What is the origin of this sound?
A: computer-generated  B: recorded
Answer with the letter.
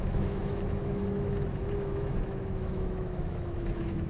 A